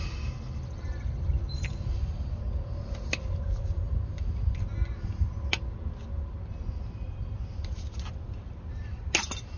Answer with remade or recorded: recorded